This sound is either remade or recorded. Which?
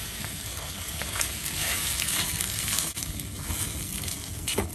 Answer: remade